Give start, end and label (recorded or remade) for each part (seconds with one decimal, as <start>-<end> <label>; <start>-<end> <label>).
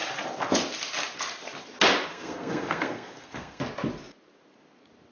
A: 0.0-2.1 recorded; 2.1-3.6 remade; 3.6-5.1 recorded